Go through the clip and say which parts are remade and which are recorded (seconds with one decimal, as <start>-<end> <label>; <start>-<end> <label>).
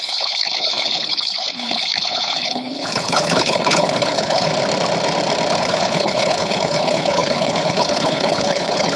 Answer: 0.0-4.5 remade; 4.5-5.6 recorded; 5.6-9.0 remade